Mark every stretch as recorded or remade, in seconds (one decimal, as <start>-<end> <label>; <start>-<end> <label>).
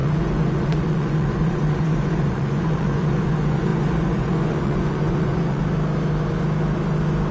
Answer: 0.0-5.6 remade; 5.6-7.3 recorded